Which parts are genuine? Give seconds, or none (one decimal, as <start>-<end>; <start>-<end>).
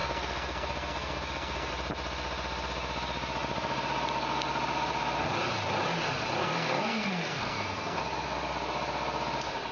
1.7-6.4; 8.0-9.7